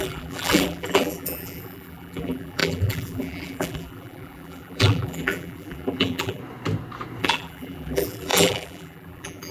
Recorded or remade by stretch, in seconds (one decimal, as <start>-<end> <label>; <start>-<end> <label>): 0.0-6.4 remade; 6.4-7.2 recorded; 7.2-9.5 remade

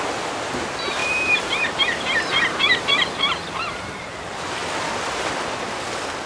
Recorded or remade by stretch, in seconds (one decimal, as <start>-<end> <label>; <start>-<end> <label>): 0.0-1.0 recorded; 1.0-4.0 remade; 4.0-6.3 recorded